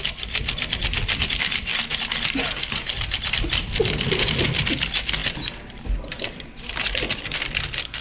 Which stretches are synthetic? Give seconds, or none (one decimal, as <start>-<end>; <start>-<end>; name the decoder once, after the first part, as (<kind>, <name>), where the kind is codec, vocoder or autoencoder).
none